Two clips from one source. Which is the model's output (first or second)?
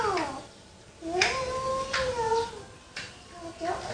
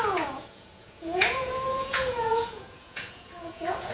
second